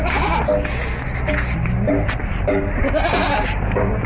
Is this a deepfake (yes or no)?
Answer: no